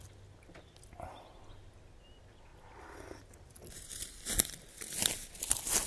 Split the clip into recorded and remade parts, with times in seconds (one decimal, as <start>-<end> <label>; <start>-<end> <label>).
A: 0.0-5.9 recorded